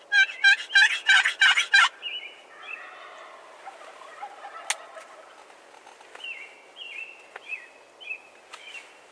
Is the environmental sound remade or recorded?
recorded